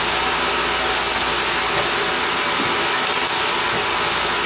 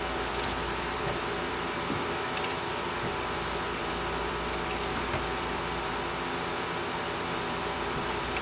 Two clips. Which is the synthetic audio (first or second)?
second